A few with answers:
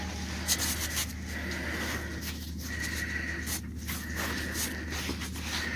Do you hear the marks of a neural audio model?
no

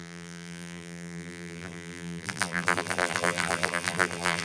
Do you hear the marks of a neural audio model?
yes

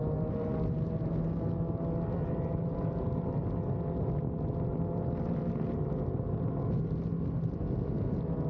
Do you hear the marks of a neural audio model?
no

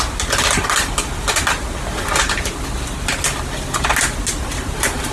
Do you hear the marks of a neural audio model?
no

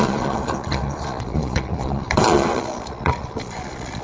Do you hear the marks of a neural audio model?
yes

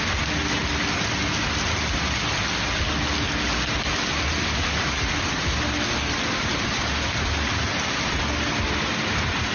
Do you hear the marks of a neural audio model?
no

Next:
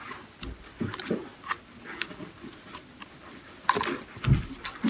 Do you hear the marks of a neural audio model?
no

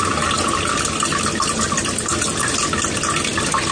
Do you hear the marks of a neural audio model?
no